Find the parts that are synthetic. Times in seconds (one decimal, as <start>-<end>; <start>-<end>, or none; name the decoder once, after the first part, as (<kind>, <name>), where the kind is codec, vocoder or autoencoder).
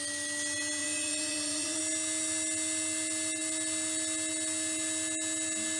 0.8-1.8 (vocoder, Vocos)